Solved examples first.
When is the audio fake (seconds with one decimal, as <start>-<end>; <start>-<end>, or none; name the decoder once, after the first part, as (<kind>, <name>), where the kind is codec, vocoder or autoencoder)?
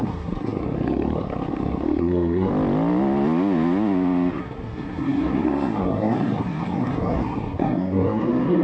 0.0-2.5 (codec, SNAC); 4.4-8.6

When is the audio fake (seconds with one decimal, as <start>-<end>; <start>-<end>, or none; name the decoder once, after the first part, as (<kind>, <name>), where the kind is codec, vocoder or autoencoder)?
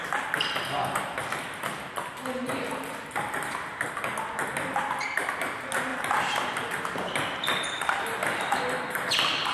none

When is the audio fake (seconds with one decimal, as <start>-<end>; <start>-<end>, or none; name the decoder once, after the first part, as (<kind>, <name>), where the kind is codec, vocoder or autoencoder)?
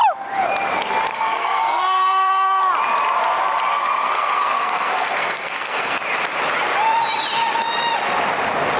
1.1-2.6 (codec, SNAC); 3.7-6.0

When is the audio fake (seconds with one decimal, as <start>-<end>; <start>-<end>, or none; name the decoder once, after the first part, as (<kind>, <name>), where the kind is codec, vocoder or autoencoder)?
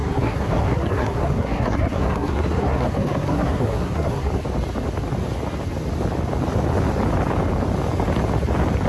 0.0-4.3 (codec, SNAC)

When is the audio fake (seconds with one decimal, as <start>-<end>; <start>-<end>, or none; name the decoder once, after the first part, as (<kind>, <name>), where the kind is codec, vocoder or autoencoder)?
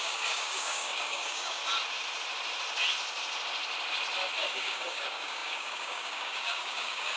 0.0-1.6 (codec, DAC); 4.4-7.2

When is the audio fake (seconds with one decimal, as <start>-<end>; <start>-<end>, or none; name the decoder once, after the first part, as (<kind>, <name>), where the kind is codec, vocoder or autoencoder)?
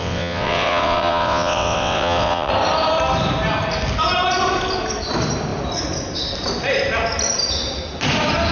0.0-2.5 (vocoder, WaveNeXt)